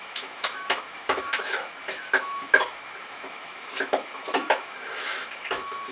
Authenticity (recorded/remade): remade